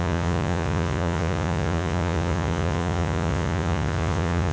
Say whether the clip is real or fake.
fake